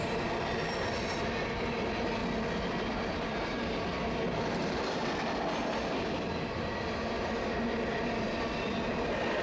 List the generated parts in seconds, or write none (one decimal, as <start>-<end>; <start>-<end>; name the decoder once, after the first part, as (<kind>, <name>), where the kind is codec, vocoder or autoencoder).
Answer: none

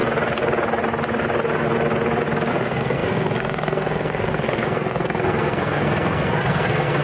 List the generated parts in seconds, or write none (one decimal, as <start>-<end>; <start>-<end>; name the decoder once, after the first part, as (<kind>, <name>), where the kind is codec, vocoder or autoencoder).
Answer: 2.5-7.0 (codec, SNAC)

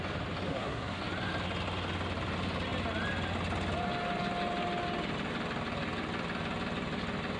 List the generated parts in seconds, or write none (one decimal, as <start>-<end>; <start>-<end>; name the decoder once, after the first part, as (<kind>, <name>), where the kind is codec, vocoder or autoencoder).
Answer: 0.5-1.0 (codec, SNAC)